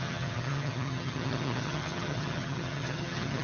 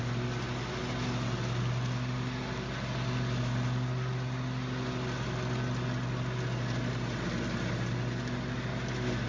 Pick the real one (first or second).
second